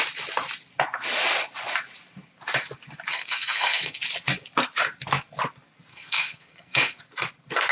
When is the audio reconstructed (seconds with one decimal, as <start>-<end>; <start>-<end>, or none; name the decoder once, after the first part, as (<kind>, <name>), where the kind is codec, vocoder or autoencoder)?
3.1-4.0 (codec, SNAC); 5.9-7.0